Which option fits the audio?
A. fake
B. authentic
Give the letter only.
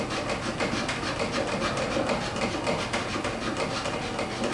B